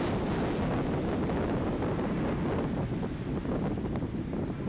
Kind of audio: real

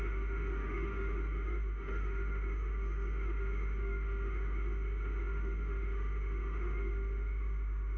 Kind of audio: fake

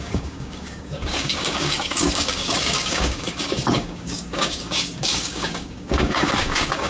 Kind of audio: fake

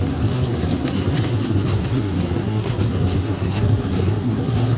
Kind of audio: fake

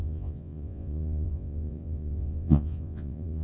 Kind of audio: fake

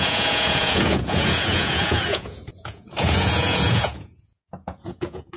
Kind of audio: fake